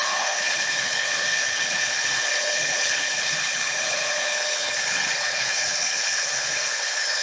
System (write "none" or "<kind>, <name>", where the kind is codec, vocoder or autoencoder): codec, HILCodec